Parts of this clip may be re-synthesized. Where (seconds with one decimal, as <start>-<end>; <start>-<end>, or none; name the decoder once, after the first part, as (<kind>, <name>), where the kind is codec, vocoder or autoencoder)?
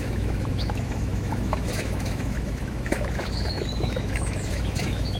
0.0-5.2 (autoencoder, DAC-VAE)